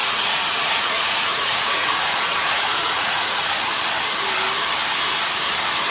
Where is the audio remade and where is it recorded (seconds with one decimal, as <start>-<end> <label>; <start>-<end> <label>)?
0.0-3.5 remade; 3.5-5.9 recorded